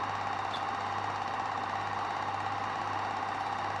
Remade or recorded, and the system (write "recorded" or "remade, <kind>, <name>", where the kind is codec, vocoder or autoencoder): recorded